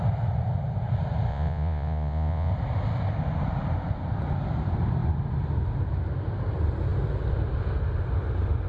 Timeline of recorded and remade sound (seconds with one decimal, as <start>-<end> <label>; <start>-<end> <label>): 0.0-1.3 recorded; 1.3-2.5 remade; 2.5-8.7 recorded